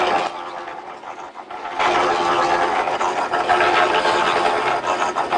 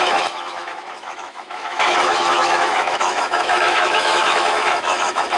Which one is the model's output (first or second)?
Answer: second